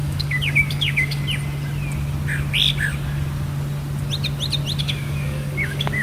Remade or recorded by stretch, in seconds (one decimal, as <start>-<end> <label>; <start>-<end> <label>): 0.0-1.2 remade; 1.2-4.8 recorded; 4.8-6.0 remade